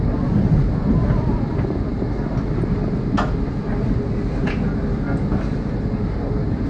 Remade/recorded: recorded